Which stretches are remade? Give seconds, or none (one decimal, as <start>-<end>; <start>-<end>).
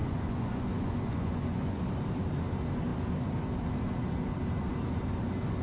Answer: 0.0-1.8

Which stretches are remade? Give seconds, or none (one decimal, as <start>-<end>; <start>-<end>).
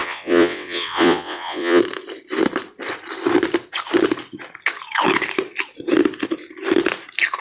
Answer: 0.0-1.8